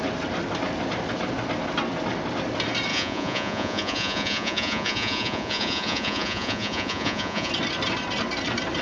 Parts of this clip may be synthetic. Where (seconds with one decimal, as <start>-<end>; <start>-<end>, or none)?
2.9-7.5